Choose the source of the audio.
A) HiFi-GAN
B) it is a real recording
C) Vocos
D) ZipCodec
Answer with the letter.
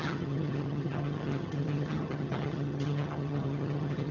A